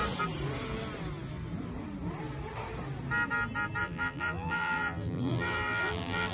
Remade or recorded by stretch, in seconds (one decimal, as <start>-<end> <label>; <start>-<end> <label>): 0.0-3.8 recorded; 3.8-6.3 remade